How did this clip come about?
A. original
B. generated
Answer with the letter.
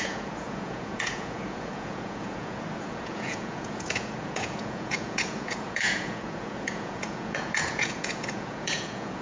B